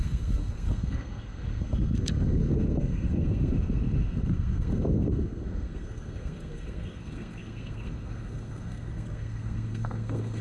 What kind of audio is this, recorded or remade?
remade